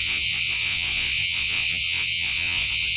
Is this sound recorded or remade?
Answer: remade